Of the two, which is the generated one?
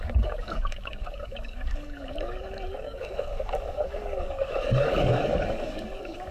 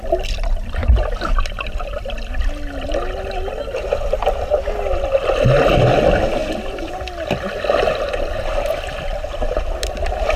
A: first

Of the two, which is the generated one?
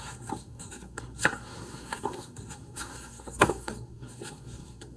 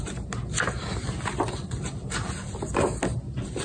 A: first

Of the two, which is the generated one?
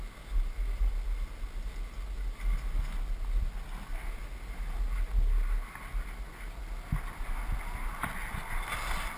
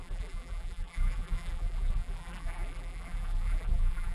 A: second